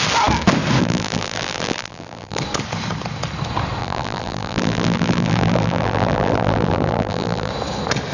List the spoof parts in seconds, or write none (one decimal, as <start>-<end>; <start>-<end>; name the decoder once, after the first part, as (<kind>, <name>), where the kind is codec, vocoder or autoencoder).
0.8-2.4 (vocoder, BigVGAN v2); 3.8-7.5